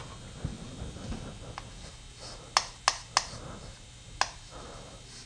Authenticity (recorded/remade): recorded